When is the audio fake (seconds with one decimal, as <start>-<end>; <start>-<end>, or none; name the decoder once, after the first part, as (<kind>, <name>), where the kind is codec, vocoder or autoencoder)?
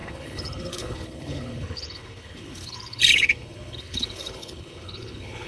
0.0-5.5 (codec, HILCodec)